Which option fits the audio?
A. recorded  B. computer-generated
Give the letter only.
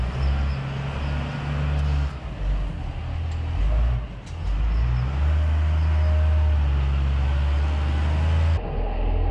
A